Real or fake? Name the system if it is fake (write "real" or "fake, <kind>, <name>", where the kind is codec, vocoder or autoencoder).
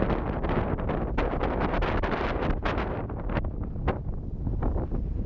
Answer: real